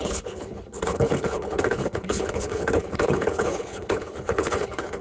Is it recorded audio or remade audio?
remade